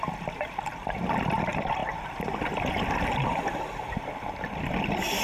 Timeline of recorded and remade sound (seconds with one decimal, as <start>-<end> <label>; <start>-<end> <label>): 0.0-5.2 recorded